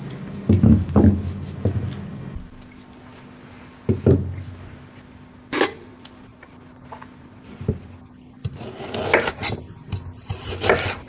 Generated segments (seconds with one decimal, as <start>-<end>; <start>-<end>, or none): none